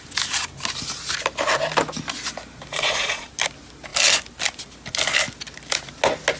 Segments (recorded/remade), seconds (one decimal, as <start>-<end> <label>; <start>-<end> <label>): 0.0-2.7 recorded; 2.7-3.3 remade; 3.3-6.4 recorded